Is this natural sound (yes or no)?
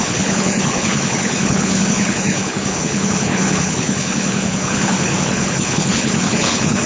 no